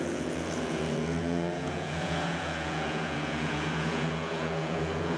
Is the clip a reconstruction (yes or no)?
yes